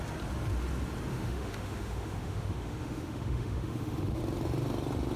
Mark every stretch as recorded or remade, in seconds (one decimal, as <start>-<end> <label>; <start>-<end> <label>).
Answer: 0.0-1.1 recorded; 1.1-4.2 remade; 4.2-5.2 recorded